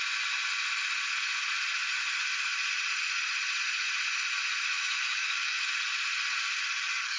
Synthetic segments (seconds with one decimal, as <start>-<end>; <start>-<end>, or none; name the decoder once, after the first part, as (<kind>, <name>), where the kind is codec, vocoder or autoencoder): 4.7-5.7 (autoencoder, DAC-VAE)